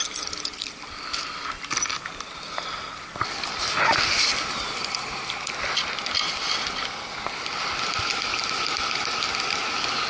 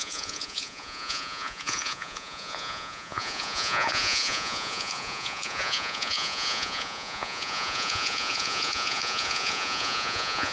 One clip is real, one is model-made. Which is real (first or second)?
first